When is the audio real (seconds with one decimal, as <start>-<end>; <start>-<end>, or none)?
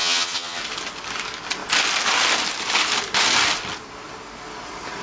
0.6-5.0